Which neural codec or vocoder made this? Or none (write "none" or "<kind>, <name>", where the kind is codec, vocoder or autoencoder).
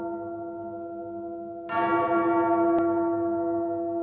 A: none